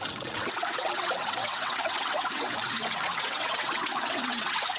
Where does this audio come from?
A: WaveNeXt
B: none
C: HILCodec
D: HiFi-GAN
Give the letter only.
A